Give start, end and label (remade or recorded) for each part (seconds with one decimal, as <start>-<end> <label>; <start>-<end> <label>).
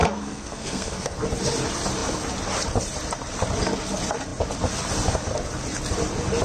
0.0-1.2 remade; 1.2-6.4 recorded